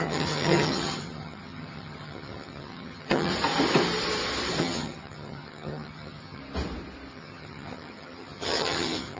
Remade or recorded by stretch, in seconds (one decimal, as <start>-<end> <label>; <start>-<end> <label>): 0.0-3.3 remade; 3.3-4.6 recorded; 4.6-6.4 remade; 6.4-7.1 recorded; 7.1-9.2 remade